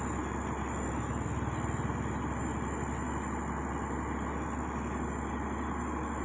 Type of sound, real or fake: real